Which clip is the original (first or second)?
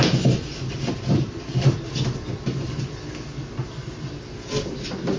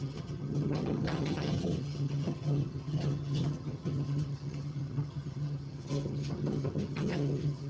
first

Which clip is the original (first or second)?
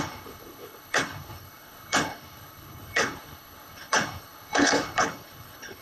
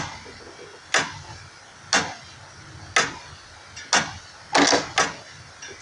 second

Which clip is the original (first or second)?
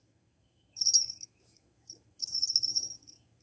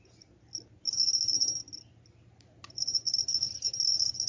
second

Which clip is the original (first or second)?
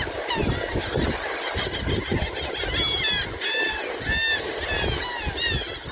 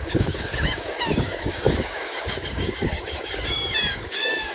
first